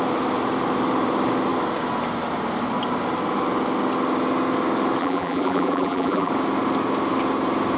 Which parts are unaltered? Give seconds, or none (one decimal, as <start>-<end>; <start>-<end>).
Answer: 0.0-5.0; 6.3-7.8

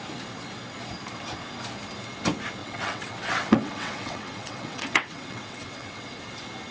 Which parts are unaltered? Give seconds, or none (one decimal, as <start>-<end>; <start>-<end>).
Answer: 0.0-2.6; 6.2-6.7

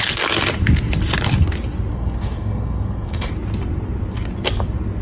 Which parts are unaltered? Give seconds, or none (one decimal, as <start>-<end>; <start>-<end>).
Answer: 0.0-1.9; 3.3-5.0

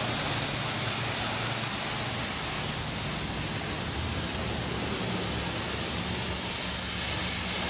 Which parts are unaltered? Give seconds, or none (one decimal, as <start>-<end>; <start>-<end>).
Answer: 0.0-7.7

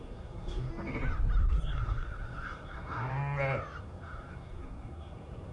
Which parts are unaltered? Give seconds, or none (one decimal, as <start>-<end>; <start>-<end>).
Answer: 0.7-1.4; 3.1-3.8

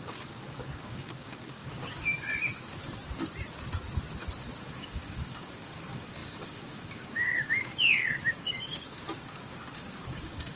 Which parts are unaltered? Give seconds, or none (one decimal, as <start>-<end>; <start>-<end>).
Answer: 2.1-4.6